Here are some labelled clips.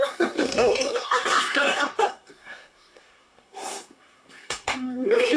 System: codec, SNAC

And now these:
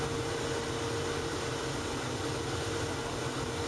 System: none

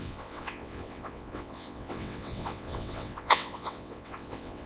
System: vocoder, WaveNeXt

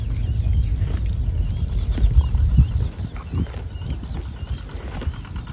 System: none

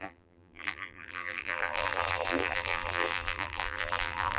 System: vocoder, BigVGAN v2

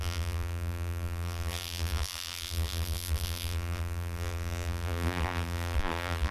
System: vocoder, BigVGAN v2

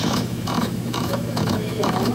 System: autoencoder, DAC-VAE